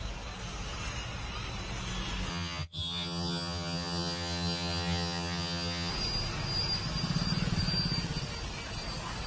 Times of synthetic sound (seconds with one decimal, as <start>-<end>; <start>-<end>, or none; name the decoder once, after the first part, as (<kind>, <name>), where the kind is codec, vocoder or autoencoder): 2.3-5.9 (vocoder, HiFi-GAN)